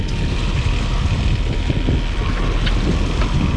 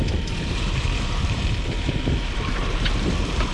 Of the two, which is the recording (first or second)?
first